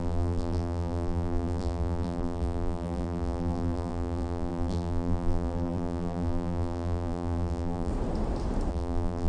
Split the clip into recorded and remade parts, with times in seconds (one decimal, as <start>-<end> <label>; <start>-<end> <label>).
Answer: 0.0-7.9 remade; 7.9-8.7 recorded; 8.7-9.3 remade